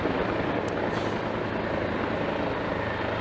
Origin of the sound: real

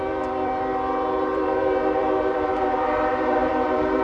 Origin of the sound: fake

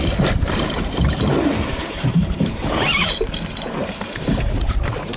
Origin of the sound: fake